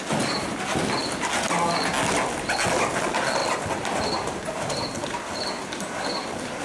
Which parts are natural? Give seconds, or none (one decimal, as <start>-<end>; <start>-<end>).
0.0-3.4